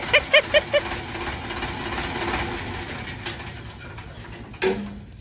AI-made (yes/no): no